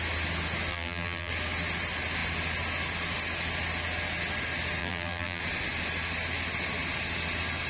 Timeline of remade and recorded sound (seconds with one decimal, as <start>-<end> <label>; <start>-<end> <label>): 0.0-0.7 recorded; 0.7-1.3 remade; 1.3-4.8 recorded; 4.8-5.4 remade; 5.4-7.7 recorded